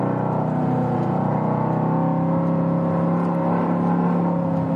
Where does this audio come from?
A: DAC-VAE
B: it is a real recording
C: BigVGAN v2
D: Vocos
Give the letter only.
B